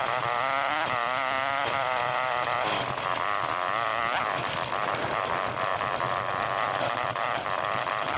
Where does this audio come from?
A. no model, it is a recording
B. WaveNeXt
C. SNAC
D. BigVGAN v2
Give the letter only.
A